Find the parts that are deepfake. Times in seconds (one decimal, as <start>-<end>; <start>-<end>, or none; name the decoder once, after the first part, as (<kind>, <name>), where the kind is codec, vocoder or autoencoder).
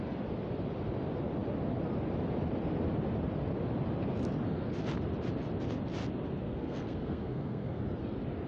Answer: 6.4-7.8 (codec, SNAC)